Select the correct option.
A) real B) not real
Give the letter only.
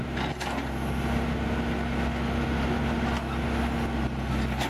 A